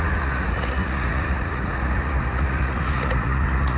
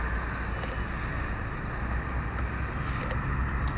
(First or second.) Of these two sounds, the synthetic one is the first